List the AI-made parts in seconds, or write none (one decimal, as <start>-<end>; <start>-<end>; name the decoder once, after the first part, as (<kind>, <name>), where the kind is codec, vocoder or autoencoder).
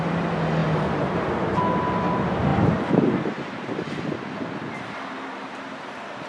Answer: none